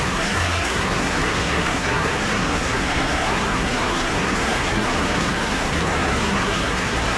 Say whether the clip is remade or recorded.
remade